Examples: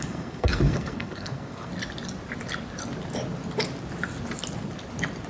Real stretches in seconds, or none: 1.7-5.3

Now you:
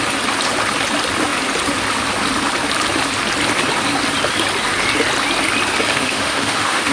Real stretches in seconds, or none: 0.0-5.9

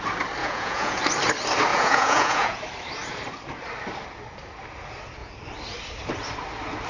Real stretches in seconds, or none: 0.0-0.4; 1.0-1.7; 2.6-6.9

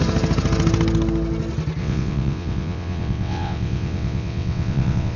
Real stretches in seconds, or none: 0.0-1.8

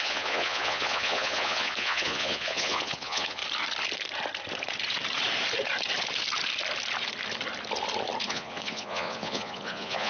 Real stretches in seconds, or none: 3.4-8.3

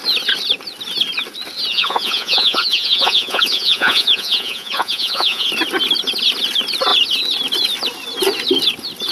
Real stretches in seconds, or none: 0.0-1.7; 5.5-9.1

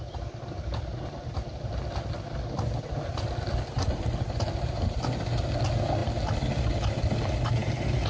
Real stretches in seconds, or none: 0.0-8.1

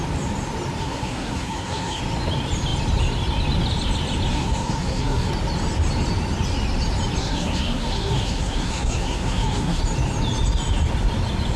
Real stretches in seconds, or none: 0.0-0.8; 2.0-4.3; 5.3-7.2; 9.8-11.6